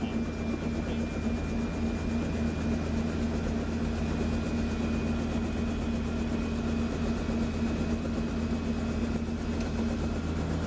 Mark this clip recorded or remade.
recorded